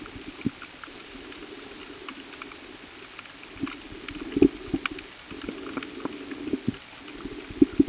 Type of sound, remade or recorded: recorded